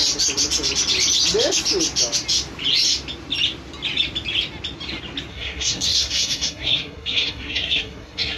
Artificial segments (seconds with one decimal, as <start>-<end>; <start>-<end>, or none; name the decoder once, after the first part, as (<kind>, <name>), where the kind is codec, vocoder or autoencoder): 5.3-8.4 (codec, SNAC)